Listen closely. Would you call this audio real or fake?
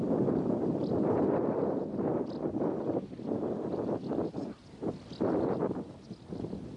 real